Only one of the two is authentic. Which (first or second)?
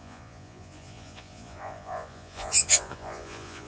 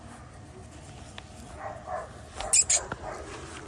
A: second